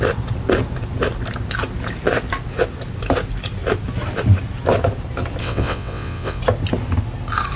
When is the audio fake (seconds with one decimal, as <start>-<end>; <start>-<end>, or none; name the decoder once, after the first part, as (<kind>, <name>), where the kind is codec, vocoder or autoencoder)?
5.4-6.4 (vocoder, WaveNeXt)